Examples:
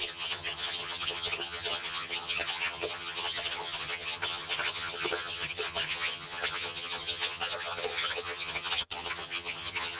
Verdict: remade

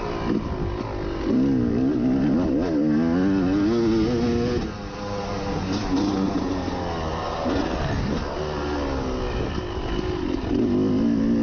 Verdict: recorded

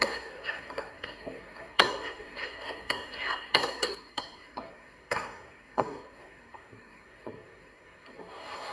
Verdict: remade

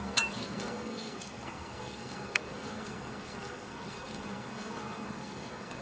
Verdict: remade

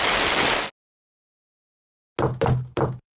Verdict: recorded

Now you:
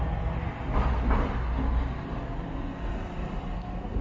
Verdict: recorded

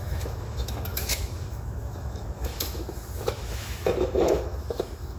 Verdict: remade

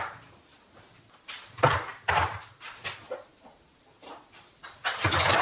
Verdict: recorded